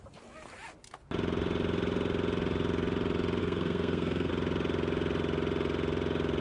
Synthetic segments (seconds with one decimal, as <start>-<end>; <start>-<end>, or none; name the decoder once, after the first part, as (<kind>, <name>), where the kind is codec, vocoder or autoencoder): 3.4-4.3 (codec, SNAC)